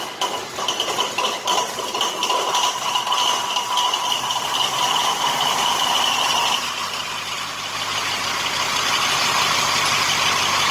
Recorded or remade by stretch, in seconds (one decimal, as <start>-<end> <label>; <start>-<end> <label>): 0.0-10.7 recorded